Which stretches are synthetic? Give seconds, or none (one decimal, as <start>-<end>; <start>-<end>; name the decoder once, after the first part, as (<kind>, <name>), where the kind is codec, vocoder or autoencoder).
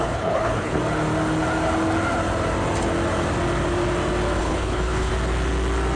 0.0-0.8 (codec, HILCodec); 4.4-5.1